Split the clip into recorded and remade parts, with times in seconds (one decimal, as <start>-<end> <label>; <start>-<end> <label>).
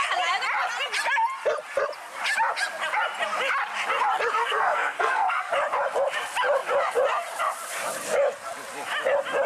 0.0-4.4 recorded; 4.4-5.5 remade; 5.5-9.5 recorded